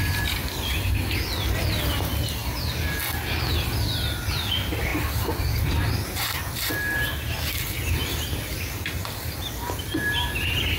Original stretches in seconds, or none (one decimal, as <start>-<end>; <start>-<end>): 0.0-10.8